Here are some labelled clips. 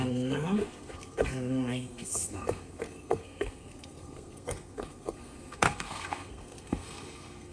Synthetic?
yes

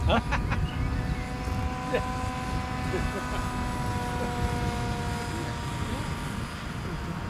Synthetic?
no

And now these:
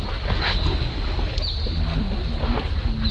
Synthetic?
no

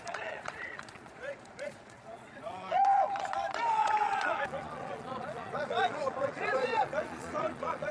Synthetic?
yes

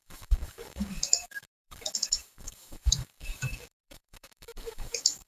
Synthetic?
yes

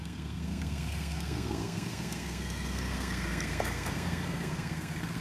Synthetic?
yes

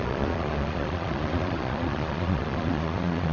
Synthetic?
yes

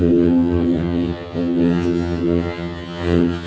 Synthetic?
yes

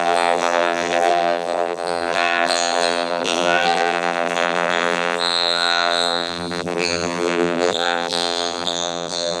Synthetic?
yes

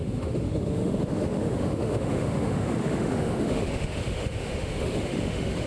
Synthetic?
yes